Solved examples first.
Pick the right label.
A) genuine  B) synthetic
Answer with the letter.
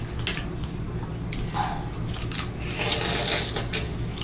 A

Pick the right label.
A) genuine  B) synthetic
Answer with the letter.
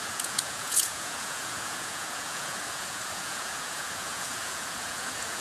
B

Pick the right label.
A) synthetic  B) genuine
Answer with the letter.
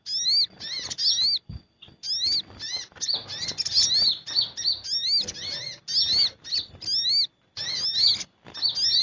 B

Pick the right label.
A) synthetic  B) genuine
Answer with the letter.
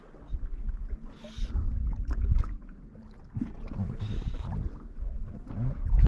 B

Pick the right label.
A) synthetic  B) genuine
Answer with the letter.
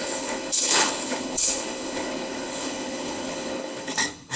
A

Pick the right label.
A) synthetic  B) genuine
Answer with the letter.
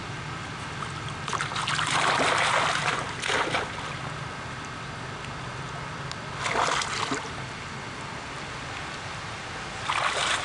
B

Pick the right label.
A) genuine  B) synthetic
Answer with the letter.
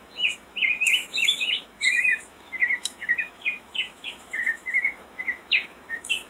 B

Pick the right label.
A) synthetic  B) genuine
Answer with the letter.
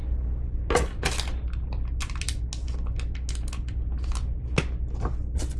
B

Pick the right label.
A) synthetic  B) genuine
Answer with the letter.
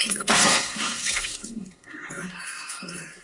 A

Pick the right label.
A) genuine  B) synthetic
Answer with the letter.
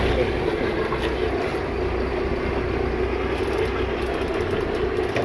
A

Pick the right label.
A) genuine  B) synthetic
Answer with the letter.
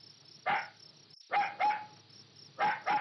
A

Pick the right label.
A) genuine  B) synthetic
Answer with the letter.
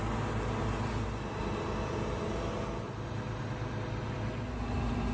A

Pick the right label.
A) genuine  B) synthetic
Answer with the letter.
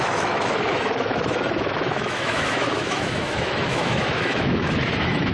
B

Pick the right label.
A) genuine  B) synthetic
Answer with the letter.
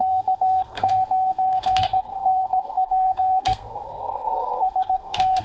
B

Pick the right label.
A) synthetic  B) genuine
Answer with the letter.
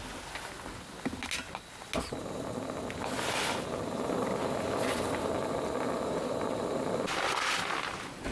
B